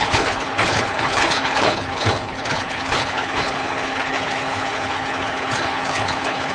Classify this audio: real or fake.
fake